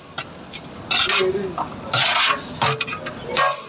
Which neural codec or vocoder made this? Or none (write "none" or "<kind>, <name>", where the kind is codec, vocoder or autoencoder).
none